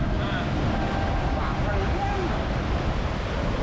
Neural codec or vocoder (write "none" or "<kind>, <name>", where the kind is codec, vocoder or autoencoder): none